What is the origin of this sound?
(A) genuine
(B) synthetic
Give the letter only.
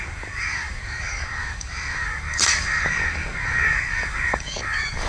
B